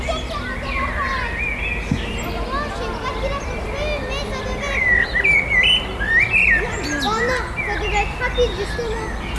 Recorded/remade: recorded